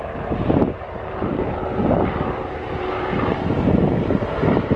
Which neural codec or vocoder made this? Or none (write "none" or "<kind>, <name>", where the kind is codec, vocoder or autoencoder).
vocoder, BigVGAN v2